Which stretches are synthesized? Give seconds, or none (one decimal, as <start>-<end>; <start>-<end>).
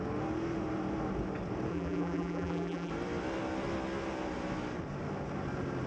1.7-2.9